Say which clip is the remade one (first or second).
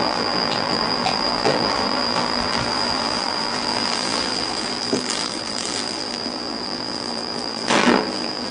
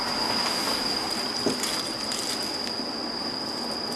first